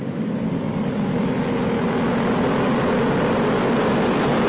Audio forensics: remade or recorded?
recorded